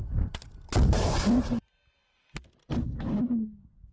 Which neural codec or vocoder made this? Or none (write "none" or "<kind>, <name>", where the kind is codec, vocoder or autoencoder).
none